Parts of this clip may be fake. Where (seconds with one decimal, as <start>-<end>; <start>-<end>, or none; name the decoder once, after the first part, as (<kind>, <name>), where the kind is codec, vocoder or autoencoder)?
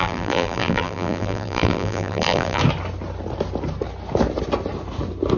0.0-2.6 (vocoder, BigVGAN v2)